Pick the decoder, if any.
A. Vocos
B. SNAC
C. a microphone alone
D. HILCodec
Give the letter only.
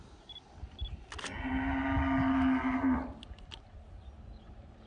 C